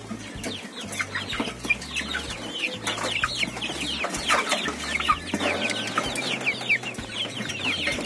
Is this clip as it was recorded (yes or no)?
yes